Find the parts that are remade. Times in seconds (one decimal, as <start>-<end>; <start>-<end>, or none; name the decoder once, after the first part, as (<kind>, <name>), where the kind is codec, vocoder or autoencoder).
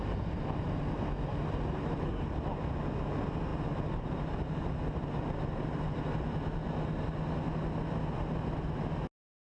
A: none